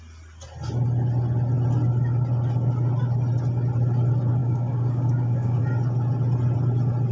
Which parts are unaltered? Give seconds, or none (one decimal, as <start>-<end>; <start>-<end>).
0.0-4.4; 5.6-7.1